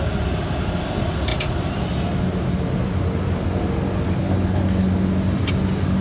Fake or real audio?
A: real